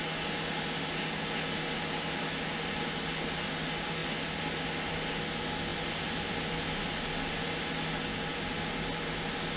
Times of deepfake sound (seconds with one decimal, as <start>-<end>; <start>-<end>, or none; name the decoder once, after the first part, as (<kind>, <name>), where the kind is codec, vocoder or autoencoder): none